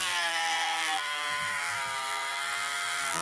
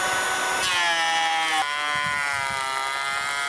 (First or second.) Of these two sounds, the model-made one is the first